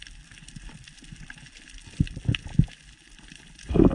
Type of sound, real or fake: real